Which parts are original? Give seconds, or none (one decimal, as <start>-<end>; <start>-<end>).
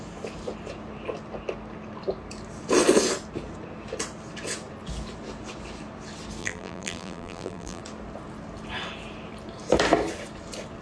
0.0-6.4; 7.8-10.8